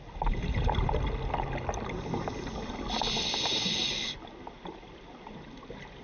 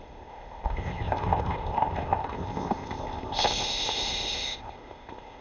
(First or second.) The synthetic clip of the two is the second